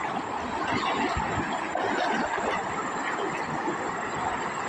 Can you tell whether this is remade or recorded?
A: recorded